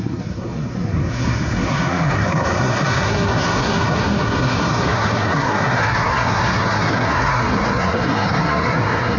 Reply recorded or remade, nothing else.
remade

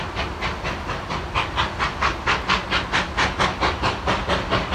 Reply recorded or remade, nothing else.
recorded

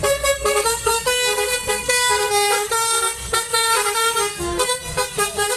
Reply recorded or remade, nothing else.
remade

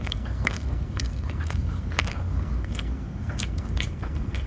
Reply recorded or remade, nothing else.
remade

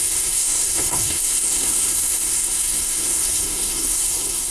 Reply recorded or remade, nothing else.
remade